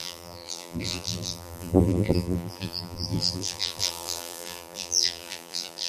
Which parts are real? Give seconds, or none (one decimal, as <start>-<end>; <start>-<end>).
none